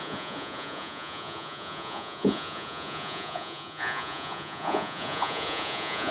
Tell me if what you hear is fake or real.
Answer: fake